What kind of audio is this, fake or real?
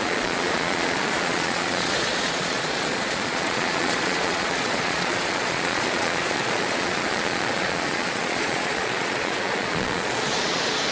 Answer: fake